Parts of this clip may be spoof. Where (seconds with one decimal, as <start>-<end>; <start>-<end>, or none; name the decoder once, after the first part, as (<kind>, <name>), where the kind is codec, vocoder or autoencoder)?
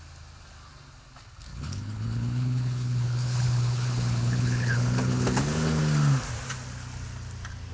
1.5-5.8 (codec, HILCodec)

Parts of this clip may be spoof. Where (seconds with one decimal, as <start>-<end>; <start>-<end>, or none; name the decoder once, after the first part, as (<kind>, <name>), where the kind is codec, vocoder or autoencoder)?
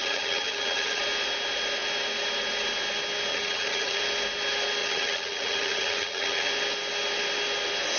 0.0-1.0 (vocoder, HiFi-GAN); 3.3-4.0; 4.8-6.5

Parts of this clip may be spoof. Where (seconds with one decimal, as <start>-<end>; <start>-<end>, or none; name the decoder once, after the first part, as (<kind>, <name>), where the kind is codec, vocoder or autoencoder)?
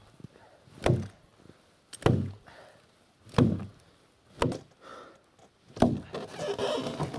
none